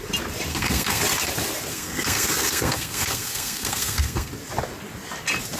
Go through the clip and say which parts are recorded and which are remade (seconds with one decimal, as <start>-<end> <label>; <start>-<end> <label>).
0.0-0.5 recorded; 0.5-1.0 remade; 1.0-1.7 recorded; 1.7-4.3 remade; 4.3-5.6 recorded